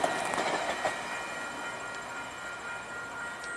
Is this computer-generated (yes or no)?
no